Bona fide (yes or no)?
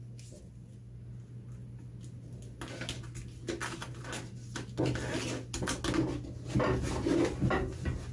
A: yes